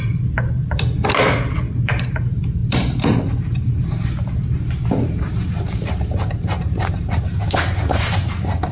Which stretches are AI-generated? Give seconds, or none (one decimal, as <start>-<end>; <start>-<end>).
0.0-0.6; 1.7-8.7